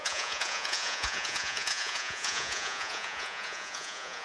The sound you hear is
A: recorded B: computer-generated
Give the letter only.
B